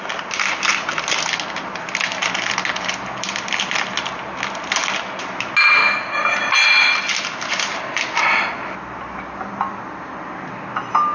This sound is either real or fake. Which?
real